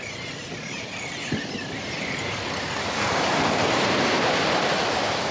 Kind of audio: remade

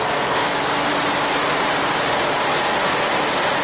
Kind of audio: recorded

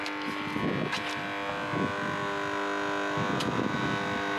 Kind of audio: recorded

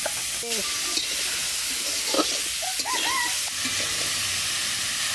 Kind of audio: recorded